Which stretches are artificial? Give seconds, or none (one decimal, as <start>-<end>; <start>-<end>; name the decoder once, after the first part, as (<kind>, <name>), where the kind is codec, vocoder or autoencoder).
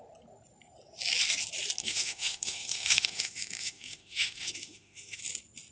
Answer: 1.8-5.2 (autoencoder, DAC-VAE)